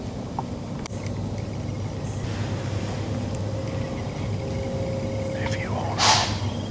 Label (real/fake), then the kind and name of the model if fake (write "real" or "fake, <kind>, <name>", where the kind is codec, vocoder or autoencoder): real